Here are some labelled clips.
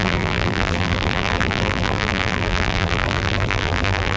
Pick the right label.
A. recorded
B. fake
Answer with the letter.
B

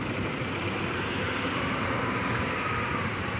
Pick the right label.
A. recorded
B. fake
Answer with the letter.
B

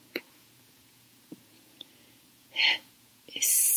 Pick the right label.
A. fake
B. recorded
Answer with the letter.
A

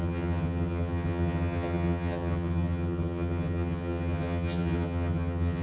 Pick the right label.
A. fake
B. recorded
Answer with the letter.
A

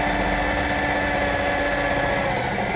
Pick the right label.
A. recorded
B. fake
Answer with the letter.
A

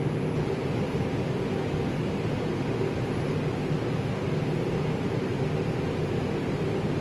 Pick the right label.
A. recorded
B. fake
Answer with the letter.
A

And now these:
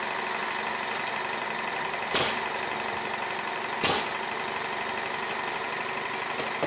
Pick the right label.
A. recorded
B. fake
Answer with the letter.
A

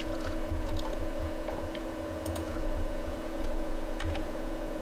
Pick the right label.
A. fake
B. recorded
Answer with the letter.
A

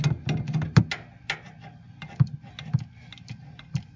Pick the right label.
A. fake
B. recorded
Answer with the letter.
B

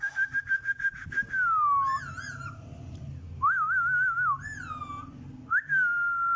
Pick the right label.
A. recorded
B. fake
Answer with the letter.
A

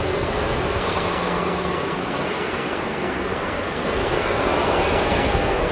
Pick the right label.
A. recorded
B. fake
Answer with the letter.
B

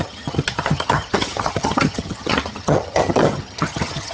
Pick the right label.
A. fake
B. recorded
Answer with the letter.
A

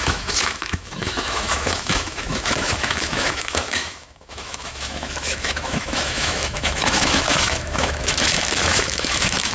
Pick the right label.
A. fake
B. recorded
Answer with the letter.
A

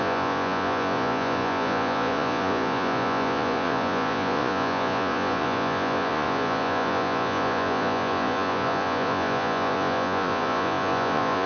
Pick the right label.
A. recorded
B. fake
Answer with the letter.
B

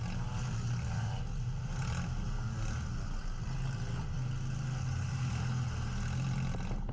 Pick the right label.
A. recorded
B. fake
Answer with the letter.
A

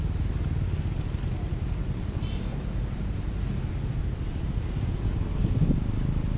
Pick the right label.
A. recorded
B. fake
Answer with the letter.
A